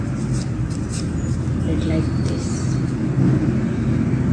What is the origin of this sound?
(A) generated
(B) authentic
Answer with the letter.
B